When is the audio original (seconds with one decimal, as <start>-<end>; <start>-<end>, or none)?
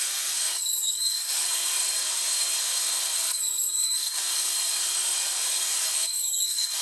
none